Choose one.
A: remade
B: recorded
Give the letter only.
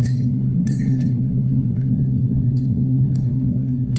A